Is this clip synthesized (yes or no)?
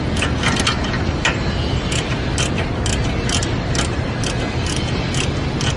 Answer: no